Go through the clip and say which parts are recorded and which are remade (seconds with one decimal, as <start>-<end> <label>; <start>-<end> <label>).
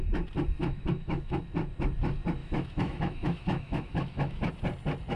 0.0-0.6 recorded; 0.6-1.4 remade; 1.4-2.4 recorded; 2.4-4.5 remade; 4.5-5.2 recorded